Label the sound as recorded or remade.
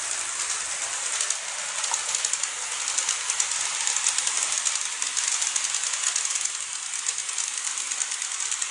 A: recorded